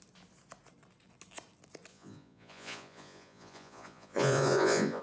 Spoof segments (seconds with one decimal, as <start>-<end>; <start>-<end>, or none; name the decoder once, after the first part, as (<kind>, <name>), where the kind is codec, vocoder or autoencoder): 1.9-5.0 (vocoder, Vocos)

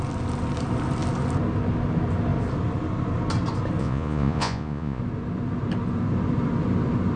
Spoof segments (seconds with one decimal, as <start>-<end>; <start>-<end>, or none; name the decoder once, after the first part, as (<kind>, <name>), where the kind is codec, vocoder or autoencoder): 3.8-5.0 (vocoder, Vocos)

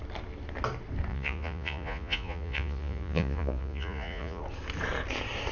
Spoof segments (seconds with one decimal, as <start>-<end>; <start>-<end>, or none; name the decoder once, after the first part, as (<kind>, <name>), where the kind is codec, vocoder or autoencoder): 1.1-4.4 (vocoder, Vocos)